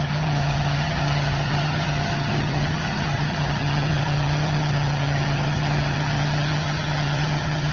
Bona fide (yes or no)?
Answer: no